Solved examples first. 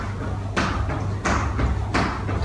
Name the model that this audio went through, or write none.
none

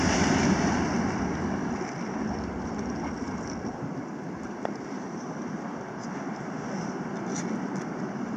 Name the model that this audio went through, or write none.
none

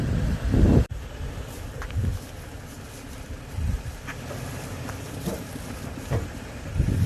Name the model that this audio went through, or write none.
none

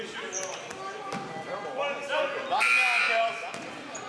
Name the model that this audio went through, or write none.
none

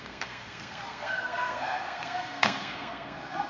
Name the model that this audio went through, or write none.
codec, SNAC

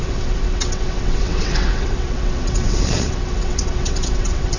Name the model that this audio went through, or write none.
vocoder, WaveNeXt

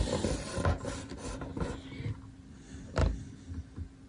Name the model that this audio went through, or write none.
none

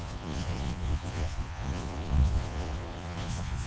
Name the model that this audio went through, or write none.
vocoder, Vocos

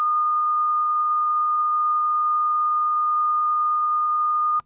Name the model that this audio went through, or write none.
codec, SNAC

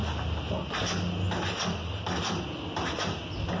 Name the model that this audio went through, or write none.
none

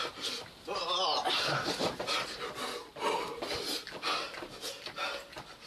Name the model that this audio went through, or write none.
none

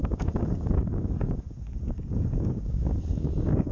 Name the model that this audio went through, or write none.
codec, DAC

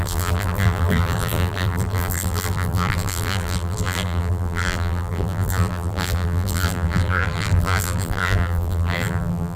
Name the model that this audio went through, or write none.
vocoder, BigVGAN v2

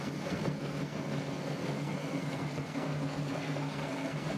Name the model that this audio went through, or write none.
codec, SNAC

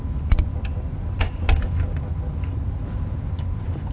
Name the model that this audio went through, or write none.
none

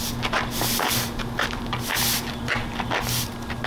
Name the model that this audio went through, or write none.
none